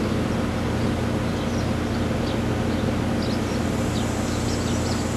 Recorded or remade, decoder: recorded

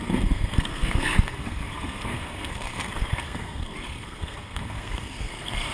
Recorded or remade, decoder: remade, codec, SNAC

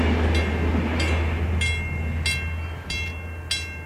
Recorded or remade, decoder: recorded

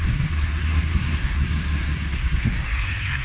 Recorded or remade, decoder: remade, codec, SNAC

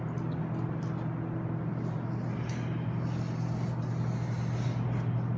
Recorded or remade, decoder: recorded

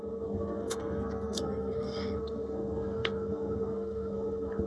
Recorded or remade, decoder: remade, codec, SNAC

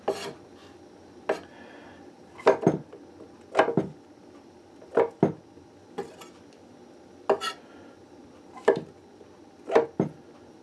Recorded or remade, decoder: recorded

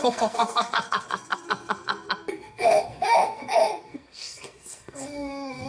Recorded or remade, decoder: remade, codec, SNAC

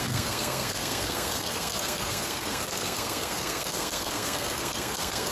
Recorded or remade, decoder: remade, codec, SNAC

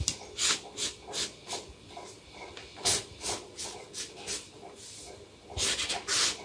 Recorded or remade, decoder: recorded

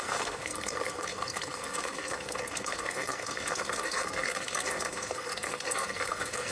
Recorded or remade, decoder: remade, codec, SNAC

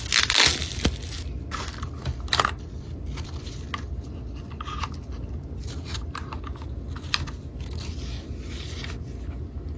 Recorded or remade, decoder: recorded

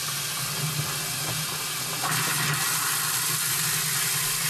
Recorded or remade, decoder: recorded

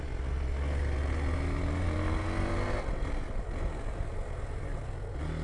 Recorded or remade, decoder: recorded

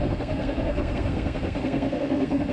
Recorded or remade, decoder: remade, codec, SNAC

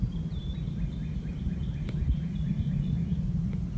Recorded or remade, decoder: recorded